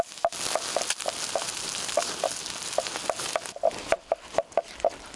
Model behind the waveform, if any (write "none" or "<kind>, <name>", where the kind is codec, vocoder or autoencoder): none